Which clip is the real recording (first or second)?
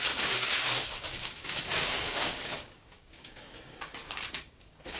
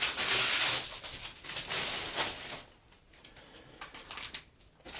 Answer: second